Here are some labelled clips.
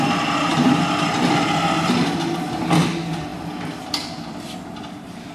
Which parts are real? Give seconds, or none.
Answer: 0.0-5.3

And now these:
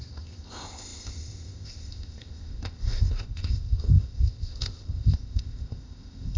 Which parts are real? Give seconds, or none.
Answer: none

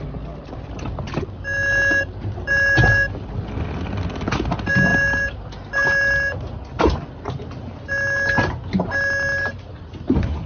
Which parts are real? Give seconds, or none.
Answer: 0.0-10.5

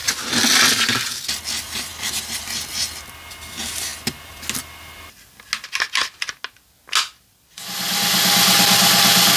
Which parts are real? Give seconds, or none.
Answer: 0.0-9.4

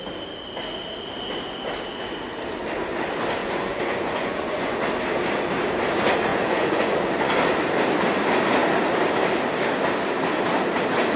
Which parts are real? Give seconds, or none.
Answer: 0.0-3.4; 4.8-6.3; 7.3-11.2